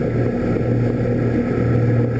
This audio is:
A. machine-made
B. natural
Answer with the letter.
B